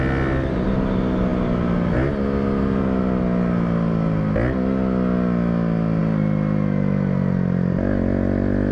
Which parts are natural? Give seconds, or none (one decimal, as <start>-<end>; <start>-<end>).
0.0-8.7